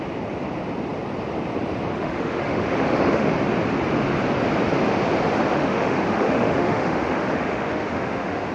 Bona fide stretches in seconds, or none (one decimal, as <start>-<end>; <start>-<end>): 0.0-1.9; 3.3-5.5